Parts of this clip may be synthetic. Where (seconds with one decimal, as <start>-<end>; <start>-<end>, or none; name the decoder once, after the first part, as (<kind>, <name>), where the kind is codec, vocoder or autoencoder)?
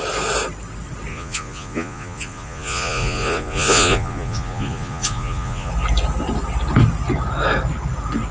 1.1-5.7 (vocoder, Vocos)